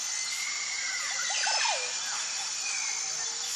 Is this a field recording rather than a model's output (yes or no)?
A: yes